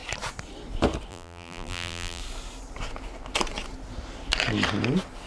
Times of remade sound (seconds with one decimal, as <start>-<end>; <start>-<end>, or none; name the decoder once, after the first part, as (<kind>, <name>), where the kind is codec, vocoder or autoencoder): 1.1-2.2 (vocoder, BigVGAN v2)